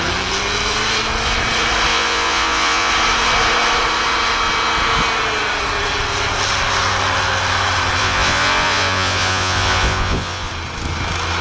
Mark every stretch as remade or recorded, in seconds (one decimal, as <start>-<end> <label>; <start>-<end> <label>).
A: 0.0-1.9 recorded; 1.9-2.9 remade; 2.9-8.0 recorded; 8.0-10.5 remade; 10.5-11.4 recorded